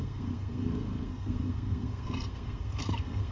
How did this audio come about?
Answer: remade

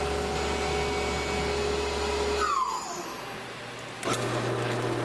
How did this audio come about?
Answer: recorded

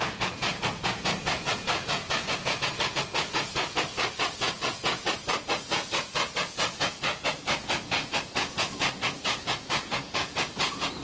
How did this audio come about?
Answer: remade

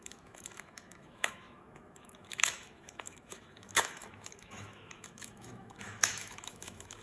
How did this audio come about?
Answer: remade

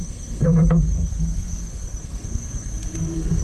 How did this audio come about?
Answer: remade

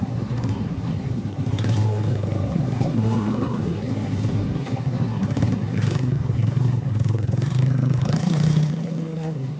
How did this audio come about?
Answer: remade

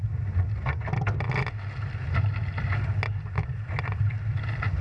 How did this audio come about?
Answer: recorded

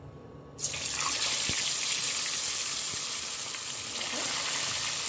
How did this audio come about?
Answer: recorded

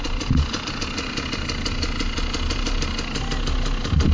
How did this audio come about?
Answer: recorded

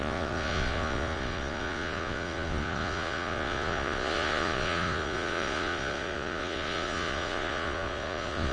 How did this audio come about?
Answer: remade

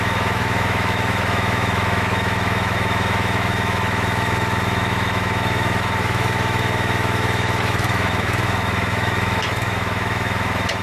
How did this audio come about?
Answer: remade